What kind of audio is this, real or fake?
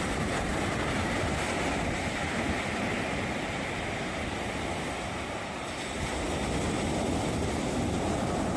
real